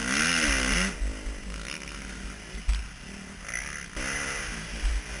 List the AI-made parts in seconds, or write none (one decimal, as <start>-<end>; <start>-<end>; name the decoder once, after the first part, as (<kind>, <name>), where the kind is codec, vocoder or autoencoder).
none